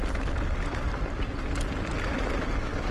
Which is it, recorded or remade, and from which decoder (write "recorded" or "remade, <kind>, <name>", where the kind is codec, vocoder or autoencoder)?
recorded